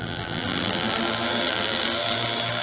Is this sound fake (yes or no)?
yes